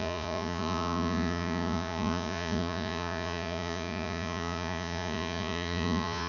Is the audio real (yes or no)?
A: no